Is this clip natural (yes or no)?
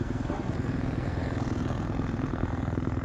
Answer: no